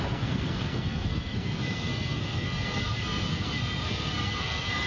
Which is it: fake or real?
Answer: fake